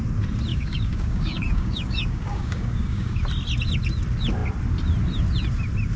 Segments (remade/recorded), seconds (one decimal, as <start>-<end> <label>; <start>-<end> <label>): 0.0-0.5 recorded; 0.5-3.2 remade; 3.2-6.0 recorded